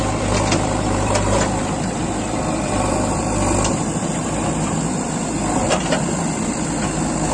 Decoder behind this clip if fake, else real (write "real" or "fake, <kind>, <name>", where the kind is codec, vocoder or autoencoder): fake, vocoder, BigVGAN v2